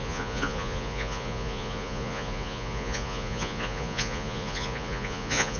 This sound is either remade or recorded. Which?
remade